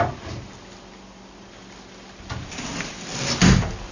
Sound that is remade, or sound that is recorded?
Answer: recorded